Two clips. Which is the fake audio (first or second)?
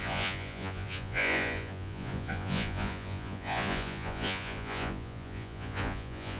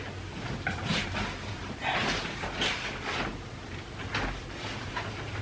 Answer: first